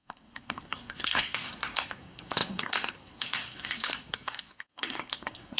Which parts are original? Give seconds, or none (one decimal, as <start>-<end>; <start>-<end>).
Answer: none